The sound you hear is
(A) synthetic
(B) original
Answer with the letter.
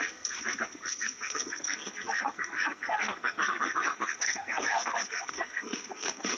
A